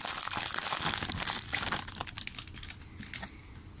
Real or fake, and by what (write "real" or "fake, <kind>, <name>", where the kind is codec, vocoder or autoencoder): real